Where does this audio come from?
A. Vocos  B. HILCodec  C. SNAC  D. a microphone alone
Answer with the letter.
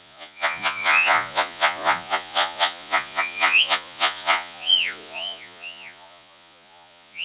A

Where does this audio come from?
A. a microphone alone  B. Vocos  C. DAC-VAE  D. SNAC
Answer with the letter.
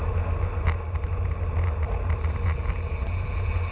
A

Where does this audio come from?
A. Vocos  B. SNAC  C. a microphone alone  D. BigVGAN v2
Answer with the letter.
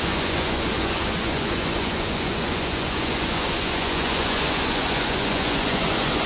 A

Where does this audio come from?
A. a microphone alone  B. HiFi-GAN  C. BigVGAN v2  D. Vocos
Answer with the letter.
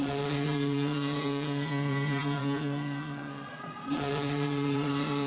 D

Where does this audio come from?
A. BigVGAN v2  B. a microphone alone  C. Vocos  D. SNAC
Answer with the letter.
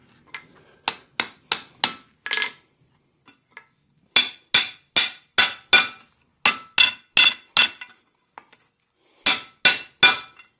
B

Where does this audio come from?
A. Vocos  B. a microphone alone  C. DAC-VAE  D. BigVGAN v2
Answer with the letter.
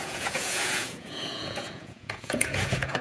A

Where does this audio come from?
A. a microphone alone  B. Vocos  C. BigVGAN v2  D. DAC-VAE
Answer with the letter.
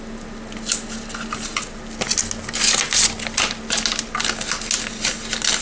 A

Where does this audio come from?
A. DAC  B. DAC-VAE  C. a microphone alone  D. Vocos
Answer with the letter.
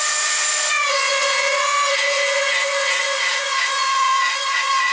D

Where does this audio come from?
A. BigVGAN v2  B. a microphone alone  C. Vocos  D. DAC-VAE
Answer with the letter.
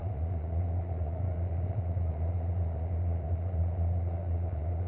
C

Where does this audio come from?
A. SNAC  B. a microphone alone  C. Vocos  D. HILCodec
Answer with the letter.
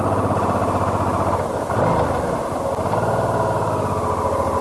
B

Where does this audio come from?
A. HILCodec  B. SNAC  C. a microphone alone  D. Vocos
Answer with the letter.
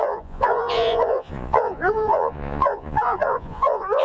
D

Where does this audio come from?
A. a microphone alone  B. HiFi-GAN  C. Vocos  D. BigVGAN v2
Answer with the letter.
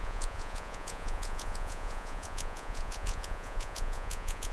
C